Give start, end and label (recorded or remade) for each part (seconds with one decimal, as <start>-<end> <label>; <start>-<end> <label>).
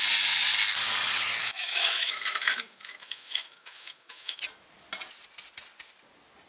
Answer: 0.0-1.4 recorded; 1.4-4.4 remade; 4.4-6.5 recorded